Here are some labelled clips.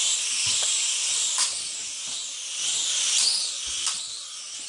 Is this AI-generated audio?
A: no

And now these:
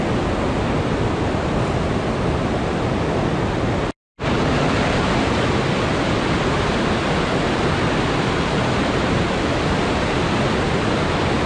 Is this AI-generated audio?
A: no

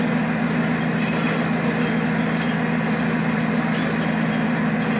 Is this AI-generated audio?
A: no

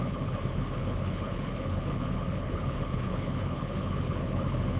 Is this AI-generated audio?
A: yes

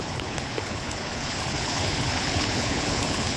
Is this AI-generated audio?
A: yes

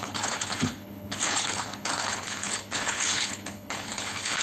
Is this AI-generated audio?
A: yes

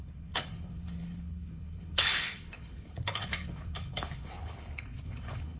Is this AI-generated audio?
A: yes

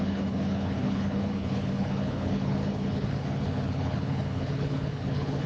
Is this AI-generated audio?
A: yes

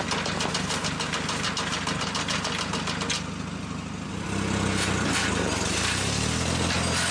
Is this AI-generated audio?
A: no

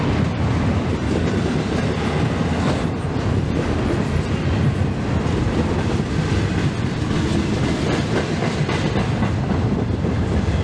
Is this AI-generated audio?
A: no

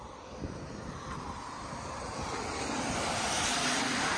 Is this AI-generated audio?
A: no